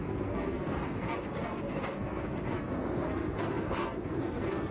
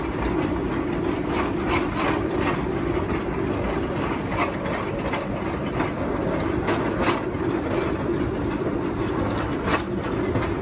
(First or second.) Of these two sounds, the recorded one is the second